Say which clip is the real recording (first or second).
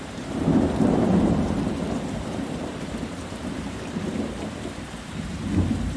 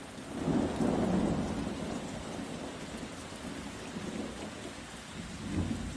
second